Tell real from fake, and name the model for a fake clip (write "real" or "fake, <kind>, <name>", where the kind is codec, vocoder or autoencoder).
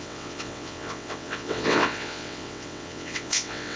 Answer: fake, vocoder, WaveNeXt